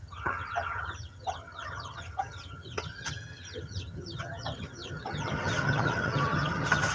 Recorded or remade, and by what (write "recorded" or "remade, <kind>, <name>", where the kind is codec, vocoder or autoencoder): remade, vocoder, HiFi-GAN